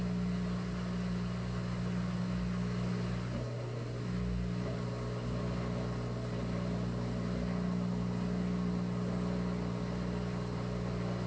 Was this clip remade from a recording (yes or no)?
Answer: no